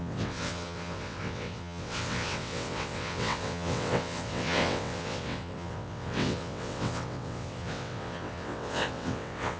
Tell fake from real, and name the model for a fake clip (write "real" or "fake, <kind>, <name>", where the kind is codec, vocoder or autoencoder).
fake, vocoder, WaveNeXt